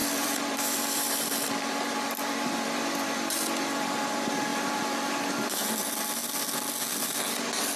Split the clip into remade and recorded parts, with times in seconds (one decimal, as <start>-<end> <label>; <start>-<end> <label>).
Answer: 0.0-4.0 remade; 4.0-4.5 recorded; 4.5-5.8 remade; 5.8-7.8 recorded

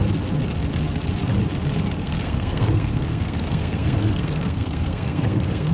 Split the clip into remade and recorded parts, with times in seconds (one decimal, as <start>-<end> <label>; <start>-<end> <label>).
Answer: 0.0-2.0 recorded; 2.0-5.7 remade

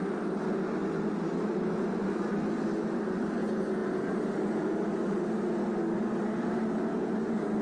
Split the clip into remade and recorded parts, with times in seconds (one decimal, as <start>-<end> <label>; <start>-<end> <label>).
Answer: 0.0-7.6 recorded

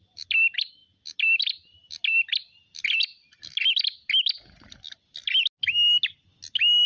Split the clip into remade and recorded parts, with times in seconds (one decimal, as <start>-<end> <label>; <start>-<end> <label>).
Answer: 0.0-6.9 recorded

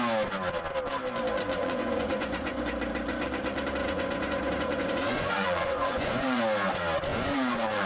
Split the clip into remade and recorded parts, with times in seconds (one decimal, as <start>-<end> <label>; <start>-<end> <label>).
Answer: 0.0-1.6 recorded; 1.6-2.6 remade; 2.6-3.8 recorded; 3.8-6.4 remade; 6.4-7.1 recorded; 7.1-7.9 remade

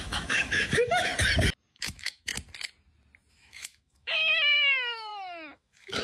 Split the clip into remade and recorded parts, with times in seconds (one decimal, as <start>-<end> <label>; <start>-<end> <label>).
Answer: 0.0-1.1 remade; 1.1-1.7 recorded; 1.7-2.3 remade; 2.3-3.3 recorded; 3.3-6.0 remade